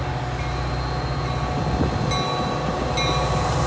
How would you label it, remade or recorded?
recorded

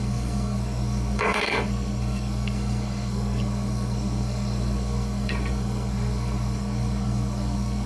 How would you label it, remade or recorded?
remade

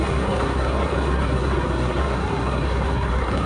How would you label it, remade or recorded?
remade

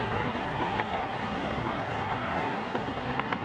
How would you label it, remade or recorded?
remade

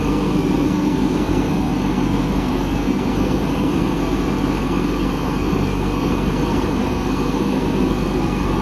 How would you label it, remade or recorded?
remade